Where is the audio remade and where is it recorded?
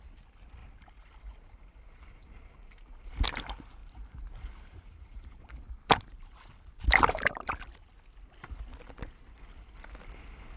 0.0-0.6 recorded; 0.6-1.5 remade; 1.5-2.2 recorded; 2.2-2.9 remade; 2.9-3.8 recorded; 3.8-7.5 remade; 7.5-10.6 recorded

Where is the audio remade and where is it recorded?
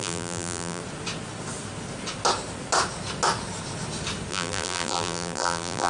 0.0-0.8 remade; 0.8-4.3 recorded; 4.3-5.9 remade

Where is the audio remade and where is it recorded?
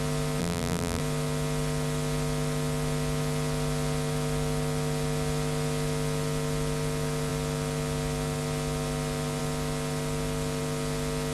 0.0-0.4 recorded; 0.4-1.0 remade; 1.0-11.3 recorded